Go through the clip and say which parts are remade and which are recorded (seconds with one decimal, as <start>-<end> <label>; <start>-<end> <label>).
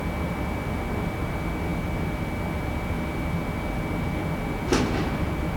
0.0-5.6 recorded